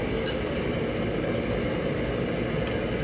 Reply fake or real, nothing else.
real